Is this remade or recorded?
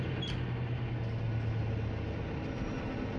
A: recorded